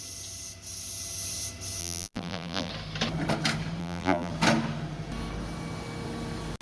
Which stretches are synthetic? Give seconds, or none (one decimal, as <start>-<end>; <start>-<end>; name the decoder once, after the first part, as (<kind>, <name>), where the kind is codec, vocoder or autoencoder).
1.8-2.7 (vocoder, BigVGAN v2); 3.8-4.3